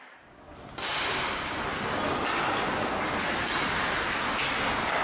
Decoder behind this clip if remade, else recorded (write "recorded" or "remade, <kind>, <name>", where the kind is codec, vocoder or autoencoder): recorded